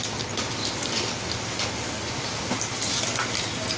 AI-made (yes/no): no